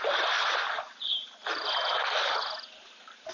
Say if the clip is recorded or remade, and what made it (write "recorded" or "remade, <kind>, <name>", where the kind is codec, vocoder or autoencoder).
recorded